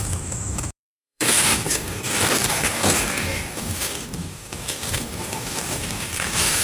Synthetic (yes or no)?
yes